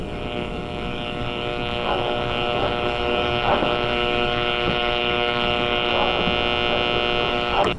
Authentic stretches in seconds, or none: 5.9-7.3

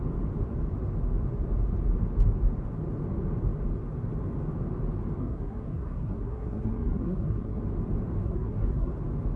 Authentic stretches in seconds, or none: 0.0-5.2; 7.6-8.2; 8.9-9.4

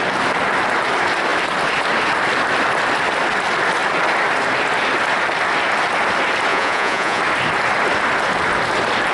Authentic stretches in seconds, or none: 0.0-6.5; 7.2-9.1

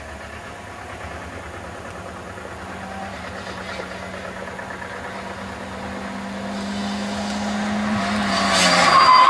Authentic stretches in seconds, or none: 0.0-9.3

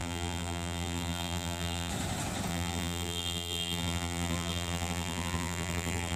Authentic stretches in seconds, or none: 1.9-2.5

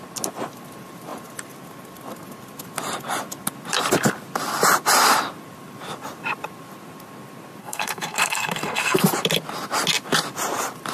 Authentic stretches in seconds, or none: 0.0-7.6; 9.0-10.9